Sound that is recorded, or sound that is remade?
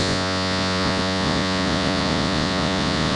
remade